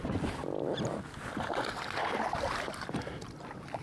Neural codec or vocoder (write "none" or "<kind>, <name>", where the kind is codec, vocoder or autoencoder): none